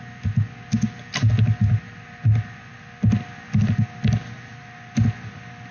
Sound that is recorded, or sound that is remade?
recorded